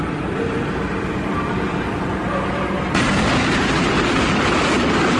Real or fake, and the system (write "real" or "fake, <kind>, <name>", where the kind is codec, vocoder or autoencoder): real